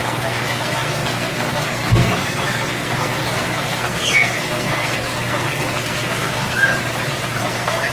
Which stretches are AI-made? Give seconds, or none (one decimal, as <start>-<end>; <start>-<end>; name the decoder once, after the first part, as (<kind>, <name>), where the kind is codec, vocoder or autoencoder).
0.0-6.7 (codec, SNAC); 7.4-7.9